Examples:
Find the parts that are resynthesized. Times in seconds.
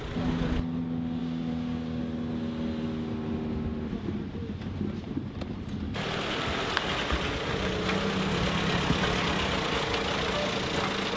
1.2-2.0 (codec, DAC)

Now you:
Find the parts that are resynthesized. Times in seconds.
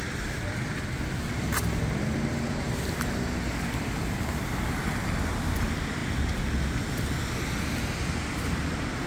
none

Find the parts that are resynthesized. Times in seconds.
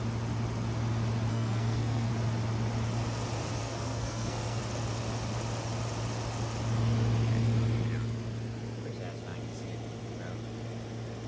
1.3-2.1 (codec, SNAC); 3.6-4.6